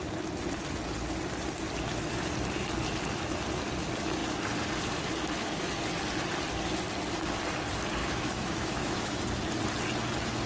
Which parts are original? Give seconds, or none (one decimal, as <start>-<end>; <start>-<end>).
0.0-8.0; 9.2-10.5